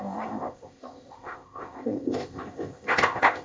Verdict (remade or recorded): remade